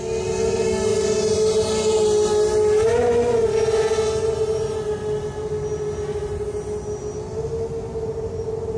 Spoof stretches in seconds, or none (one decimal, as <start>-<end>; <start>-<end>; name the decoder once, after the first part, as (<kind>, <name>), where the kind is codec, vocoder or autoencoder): none

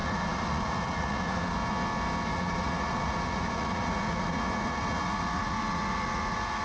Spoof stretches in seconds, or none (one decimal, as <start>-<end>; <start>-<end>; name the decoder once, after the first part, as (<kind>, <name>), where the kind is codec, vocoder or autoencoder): 0.0-1.5 (vocoder, Vocos); 2.3-6.6